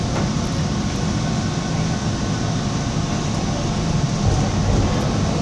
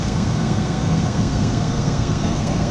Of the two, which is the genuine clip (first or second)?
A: first